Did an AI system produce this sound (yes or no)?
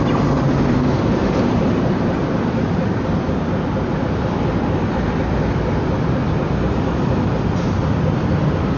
yes